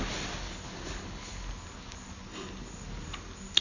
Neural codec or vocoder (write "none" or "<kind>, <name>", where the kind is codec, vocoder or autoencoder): none